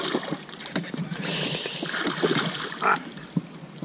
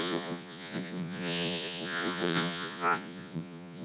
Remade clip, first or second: second